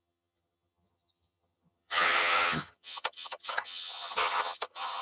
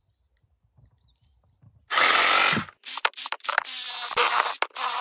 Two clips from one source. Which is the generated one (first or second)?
first